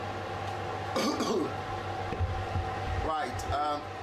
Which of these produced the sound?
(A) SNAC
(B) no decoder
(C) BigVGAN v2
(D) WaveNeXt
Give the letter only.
B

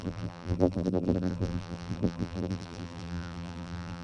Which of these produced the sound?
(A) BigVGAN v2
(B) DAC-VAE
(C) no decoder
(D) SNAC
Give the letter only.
A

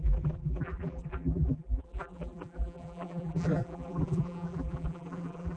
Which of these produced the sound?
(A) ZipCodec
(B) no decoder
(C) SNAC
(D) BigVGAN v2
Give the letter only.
D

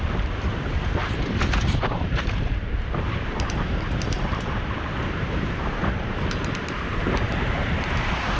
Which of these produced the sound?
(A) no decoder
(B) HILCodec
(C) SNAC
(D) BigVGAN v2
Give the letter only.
D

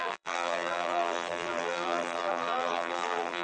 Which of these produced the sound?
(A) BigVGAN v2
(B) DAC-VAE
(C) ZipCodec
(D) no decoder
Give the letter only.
A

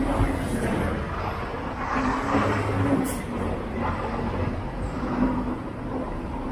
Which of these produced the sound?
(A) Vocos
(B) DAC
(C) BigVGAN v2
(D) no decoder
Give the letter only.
C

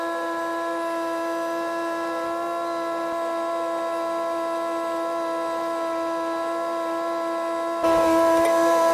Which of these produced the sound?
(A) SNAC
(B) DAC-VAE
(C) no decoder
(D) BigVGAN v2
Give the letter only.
C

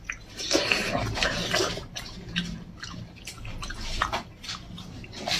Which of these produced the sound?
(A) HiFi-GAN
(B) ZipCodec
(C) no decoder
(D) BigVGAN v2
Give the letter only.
C